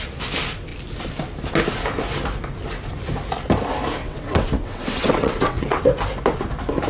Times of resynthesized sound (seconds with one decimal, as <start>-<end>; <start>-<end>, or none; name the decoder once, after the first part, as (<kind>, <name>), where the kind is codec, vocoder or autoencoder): 4.0-5.8 (vocoder, WaveNeXt)